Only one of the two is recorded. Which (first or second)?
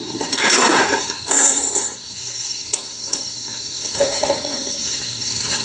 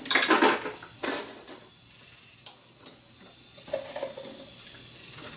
second